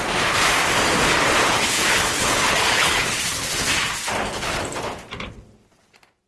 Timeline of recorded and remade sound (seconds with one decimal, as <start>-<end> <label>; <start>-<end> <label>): 0.0-1.4 recorded; 1.4-3.2 remade; 3.2-6.3 recorded